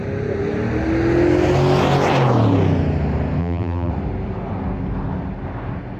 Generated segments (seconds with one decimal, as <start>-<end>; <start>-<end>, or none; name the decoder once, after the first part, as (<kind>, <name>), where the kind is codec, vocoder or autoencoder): 3.4-3.9 (vocoder, BigVGAN v2)